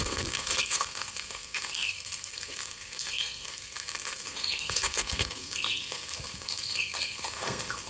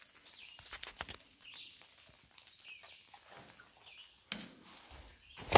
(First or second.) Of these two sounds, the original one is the second